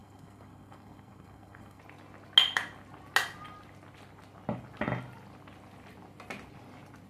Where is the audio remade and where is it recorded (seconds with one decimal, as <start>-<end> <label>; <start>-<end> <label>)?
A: 0.0-1.8 remade; 1.8-7.1 recorded